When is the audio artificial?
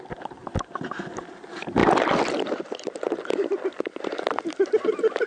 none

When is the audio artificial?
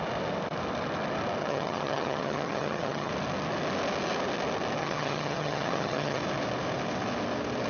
1.4-3.1 (vocoder, HiFi-GAN); 4.8-6.2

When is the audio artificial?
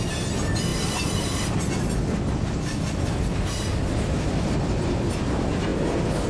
0.7-4.5 (vocoder, BigVGAN v2)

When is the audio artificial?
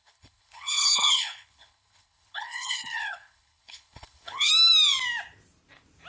0.0-4.5 (codec, HILCodec)